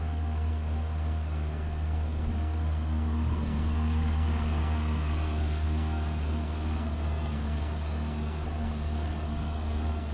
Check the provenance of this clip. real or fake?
fake